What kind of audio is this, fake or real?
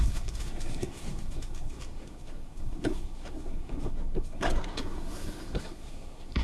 fake